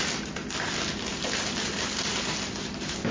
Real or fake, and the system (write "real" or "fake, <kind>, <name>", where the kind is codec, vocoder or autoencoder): real